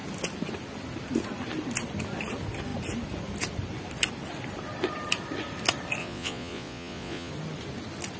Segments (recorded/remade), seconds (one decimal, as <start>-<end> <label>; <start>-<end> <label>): 0.0-6.0 recorded; 6.0-7.3 remade; 7.3-8.2 recorded